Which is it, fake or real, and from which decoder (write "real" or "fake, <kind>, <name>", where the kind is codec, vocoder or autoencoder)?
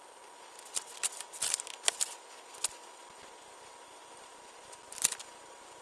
real